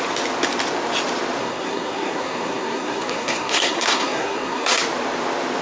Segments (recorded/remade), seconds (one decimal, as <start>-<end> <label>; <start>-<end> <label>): 0.0-1.4 recorded; 1.4-4.8 remade; 4.8-5.6 recorded